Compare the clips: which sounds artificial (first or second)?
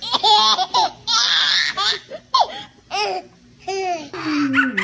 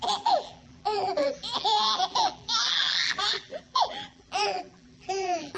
second